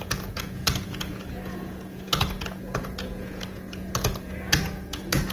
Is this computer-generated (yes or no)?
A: yes